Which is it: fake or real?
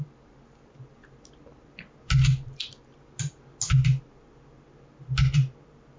real